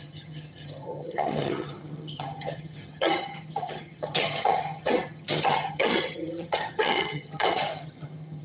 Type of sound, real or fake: fake